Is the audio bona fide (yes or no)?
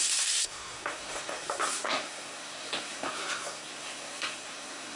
no